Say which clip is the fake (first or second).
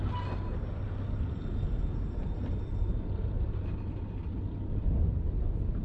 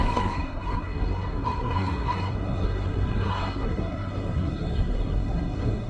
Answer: second